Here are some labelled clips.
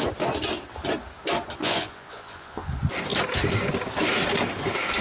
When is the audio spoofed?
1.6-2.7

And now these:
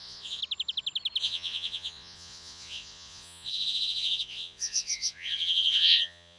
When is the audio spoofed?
0.0-0.4; 1.2-6.4